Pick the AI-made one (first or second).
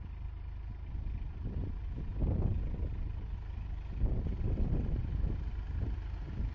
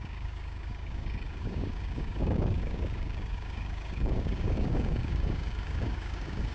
second